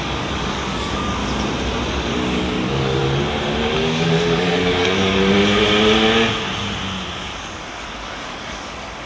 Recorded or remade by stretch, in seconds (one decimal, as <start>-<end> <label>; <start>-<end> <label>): 0.0-1.2 remade; 1.2-1.9 recorded; 1.9-3.0 remade; 3.0-3.7 recorded; 3.7-5.2 remade; 5.2-7.1 recorded; 7.1-9.1 remade